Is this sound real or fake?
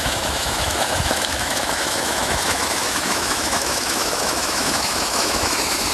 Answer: fake